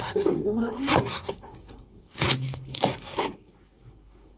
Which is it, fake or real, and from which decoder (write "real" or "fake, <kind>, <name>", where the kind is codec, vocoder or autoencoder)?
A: fake, codec, SNAC